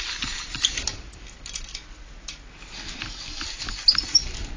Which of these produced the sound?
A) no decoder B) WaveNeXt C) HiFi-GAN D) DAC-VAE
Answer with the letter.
A